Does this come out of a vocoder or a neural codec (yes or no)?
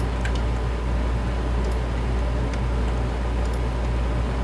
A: no